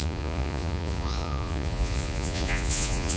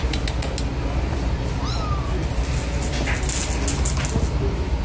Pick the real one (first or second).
second